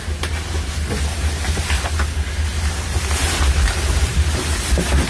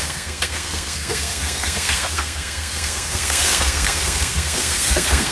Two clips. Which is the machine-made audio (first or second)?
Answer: second